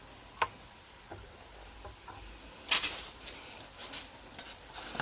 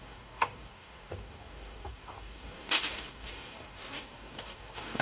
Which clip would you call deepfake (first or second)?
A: second